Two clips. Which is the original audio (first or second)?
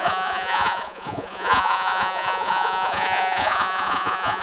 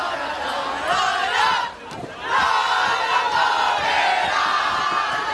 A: second